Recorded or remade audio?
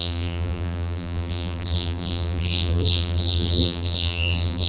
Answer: remade